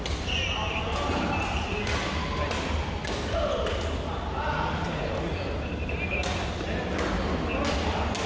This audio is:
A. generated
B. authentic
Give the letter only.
B